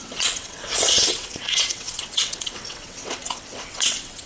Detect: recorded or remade remade